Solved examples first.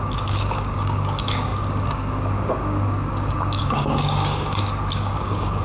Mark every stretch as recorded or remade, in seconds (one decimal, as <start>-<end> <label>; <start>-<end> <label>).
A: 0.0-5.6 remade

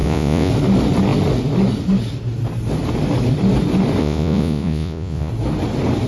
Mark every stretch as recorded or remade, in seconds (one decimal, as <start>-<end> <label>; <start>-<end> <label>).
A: 0.0-0.5 remade; 0.5-4.0 recorded; 4.0-5.3 remade; 5.3-6.1 recorded

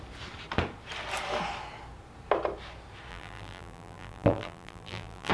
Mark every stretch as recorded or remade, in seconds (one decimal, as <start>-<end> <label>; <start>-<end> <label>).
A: 0.0-3.1 recorded; 3.1-5.3 remade

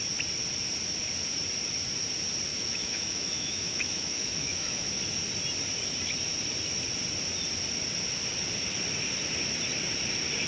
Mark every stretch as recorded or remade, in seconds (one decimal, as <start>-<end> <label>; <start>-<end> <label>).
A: 0.0-2.5 recorded; 2.5-5.0 remade; 5.0-10.5 recorded

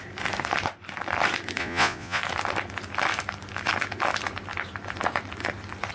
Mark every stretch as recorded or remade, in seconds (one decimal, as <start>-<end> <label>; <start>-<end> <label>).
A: 0.0-1.6 recorded; 1.6-2.2 remade; 2.2-5.9 recorded

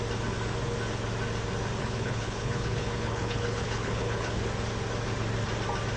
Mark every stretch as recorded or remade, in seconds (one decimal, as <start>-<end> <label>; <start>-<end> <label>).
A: 0.0-1.8 recorded; 1.8-4.4 remade; 4.4-6.0 recorded

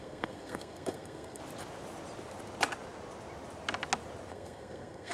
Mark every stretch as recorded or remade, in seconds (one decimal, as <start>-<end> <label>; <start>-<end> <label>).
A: 0.0-1.4 remade; 1.4-4.3 recorded; 4.3-5.1 remade

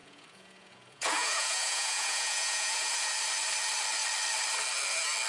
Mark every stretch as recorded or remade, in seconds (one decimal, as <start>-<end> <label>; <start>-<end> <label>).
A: 0.0-3.1 remade; 3.1-5.3 recorded